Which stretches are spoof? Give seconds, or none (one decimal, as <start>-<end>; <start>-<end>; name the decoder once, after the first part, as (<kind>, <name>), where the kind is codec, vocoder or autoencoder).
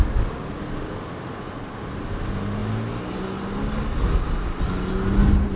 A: none